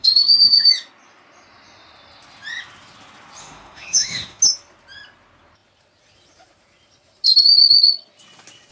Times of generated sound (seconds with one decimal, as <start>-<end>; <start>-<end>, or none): 0.0-0.7; 3.4-4.4